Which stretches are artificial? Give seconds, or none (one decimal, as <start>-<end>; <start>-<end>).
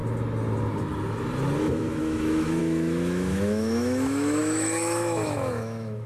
1.6-6.1